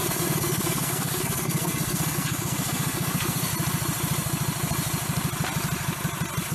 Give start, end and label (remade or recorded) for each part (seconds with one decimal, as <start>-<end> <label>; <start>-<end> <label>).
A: 0.0-3.5 remade; 3.5-6.5 recorded